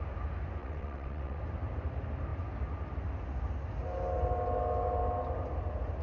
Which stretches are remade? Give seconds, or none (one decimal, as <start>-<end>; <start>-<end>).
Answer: 0.6-1.4